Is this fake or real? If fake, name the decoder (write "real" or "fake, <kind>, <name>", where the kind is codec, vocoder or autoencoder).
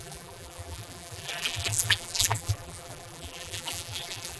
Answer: fake, vocoder, BigVGAN v2